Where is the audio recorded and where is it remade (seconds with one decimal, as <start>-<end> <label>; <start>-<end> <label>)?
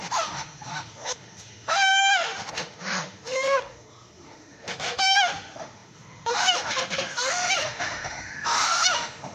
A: 0.0-9.3 remade